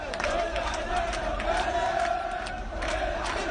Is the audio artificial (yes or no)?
yes